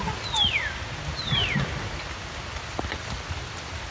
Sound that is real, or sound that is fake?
real